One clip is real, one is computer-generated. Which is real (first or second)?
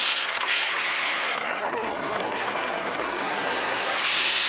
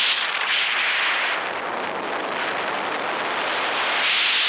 second